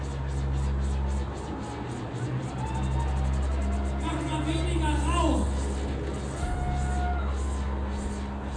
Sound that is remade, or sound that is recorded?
recorded